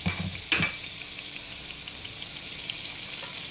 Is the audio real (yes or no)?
yes